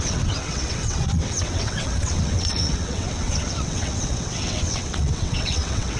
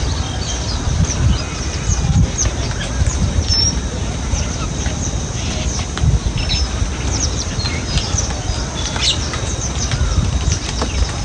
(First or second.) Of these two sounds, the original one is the second